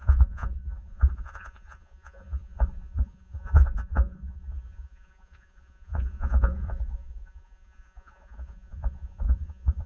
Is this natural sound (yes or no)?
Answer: no